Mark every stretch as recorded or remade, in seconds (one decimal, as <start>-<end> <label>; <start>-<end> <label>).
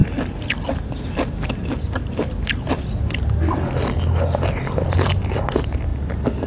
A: 0.0-6.5 recorded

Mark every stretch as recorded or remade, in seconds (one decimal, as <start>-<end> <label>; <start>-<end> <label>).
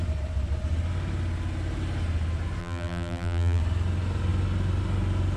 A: 0.0-2.6 recorded; 2.6-3.6 remade; 3.6-5.4 recorded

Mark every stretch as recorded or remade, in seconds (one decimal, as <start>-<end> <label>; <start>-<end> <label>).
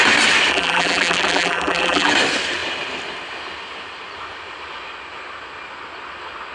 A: 0.0-0.5 recorded; 0.5-2.1 remade; 2.1-6.5 recorded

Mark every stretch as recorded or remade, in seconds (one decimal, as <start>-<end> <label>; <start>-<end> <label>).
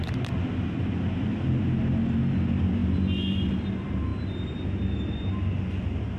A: 0.0-6.2 recorded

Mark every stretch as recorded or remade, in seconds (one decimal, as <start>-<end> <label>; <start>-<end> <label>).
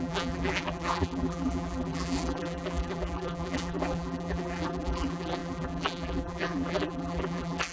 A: 0.0-7.7 remade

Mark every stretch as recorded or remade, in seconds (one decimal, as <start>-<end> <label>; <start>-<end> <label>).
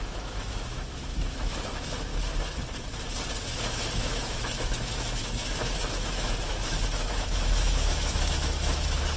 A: 0.0-2.1 remade; 2.1-3.5 recorded; 3.5-9.2 remade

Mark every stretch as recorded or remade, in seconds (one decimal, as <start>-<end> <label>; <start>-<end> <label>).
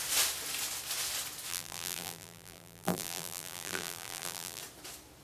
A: 0.0-1.5 recorded; 1.5-4.6 remade; 4.6-5.2 recorded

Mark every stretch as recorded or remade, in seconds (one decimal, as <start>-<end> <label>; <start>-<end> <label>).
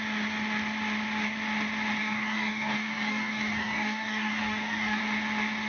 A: 0.0-2.0 recorded; 2.0-5.0 remade; 5.0-5.7 recorded